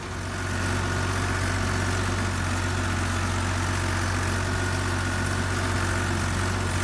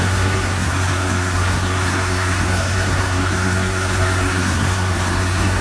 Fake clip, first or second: second